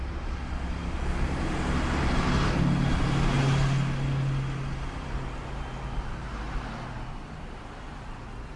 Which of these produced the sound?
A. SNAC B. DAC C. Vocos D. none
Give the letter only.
D